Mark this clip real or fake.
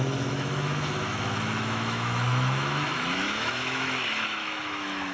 fake